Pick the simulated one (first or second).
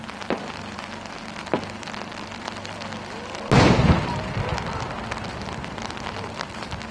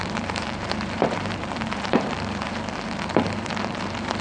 second